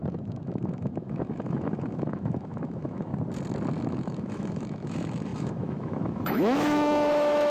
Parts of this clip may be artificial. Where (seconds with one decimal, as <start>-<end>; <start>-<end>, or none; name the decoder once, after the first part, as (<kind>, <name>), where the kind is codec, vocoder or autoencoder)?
0.0-3.1 (autoencoder, DAC-VAE); 3.9-7.5